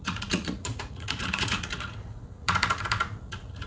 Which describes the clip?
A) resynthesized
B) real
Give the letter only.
A